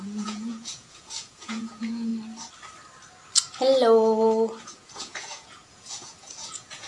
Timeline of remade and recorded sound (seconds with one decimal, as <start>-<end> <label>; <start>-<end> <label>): 0.0-2.1 remade; 2.1-4.6 recorded; 4.6-6.9 remade

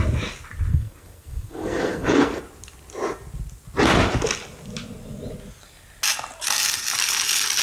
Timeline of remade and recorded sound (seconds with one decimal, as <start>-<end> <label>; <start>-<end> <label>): 0.0-0.7 recorded; 0.7-2.4 remade; 2.4-7.6 recorded

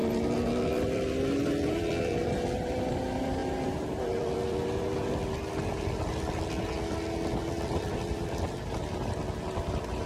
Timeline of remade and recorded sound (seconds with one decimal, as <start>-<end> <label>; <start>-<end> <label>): 0.0-0.5 recorded; 0.5-10.1 remade

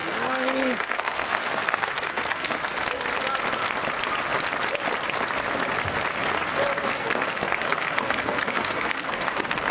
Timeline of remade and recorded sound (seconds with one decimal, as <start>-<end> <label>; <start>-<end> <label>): 0.0-2.6 remade; 2.6-6.9 recorded; 6.9-9.7 remade

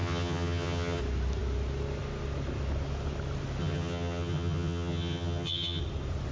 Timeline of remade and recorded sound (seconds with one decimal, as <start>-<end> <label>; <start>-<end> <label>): 0.0-1.0 remade; 1.0-3.6 recorded; 3.6-5.8 remade; 5.8-6.3 recorded

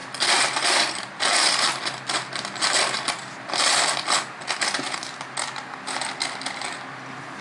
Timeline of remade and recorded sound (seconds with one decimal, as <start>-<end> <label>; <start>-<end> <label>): 0.0-3.5 remade; 3.5-7.4 recorded

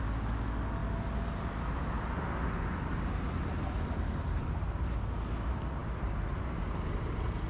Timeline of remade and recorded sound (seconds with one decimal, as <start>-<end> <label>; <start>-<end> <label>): 0.0-7.5 recorded